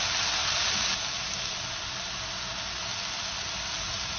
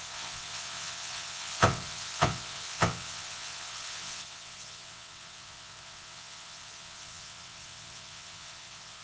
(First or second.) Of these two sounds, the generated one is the second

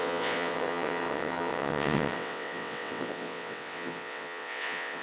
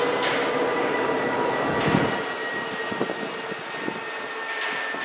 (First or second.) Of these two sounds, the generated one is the first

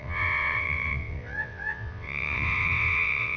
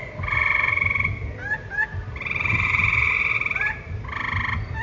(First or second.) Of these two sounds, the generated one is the first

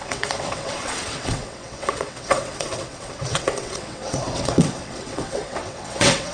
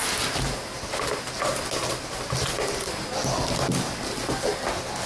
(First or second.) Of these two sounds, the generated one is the first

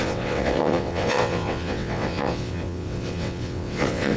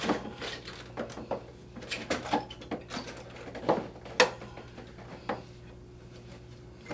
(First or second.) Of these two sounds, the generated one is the first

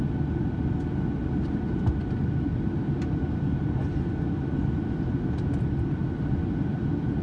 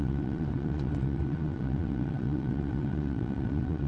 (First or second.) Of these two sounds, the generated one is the second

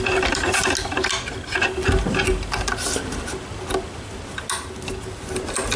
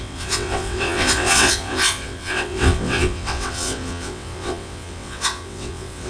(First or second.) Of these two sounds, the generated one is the second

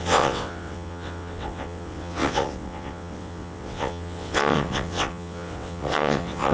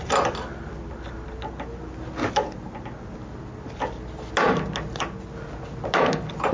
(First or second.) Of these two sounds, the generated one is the first